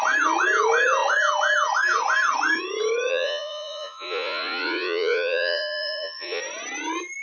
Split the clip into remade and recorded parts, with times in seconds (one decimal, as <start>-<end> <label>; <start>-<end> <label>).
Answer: 0.0-3.1 recorded; 3.1-6.4 remade; 6.4-7.2 recorded